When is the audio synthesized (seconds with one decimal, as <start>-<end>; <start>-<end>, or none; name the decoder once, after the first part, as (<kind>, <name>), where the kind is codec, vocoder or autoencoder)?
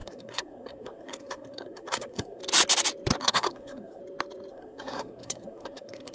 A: 0.0-2.4 (codec, SNAC); 3.2-4.0; 4.5-6.1